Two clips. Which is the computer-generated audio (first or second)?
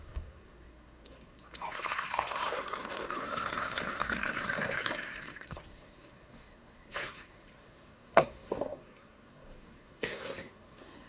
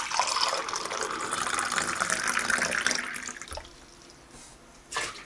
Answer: first